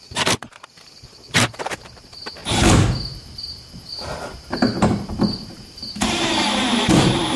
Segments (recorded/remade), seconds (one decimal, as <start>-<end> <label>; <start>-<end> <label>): 0.0-2.4 remade; 2.4-3.9 recorded; 3.9-7.4 remade